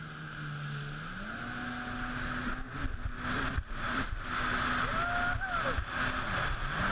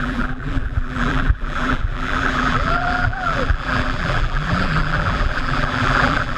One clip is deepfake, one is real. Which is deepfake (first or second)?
second